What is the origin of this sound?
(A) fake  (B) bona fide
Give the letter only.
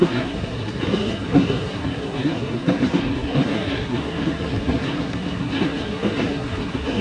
A